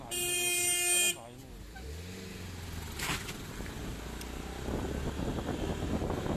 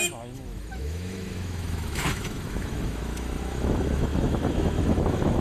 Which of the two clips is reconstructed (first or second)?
second